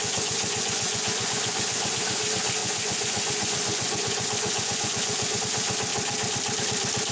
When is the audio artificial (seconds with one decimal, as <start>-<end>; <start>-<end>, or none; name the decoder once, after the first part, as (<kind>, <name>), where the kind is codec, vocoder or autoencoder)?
0.0-1.9 (vocoder, Vocos); 2.6-5.4